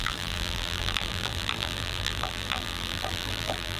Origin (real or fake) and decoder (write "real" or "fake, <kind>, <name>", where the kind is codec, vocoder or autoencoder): fake, vocoder, BigVGAN v2